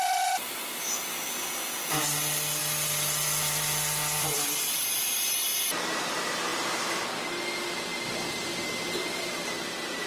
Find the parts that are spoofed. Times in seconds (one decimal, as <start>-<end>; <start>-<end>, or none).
2.6-5.3; 9.0-9.5